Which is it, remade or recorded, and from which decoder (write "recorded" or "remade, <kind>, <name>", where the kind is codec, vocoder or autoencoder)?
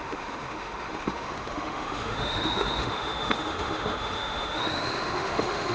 remade, autoencoder, DAC-VAE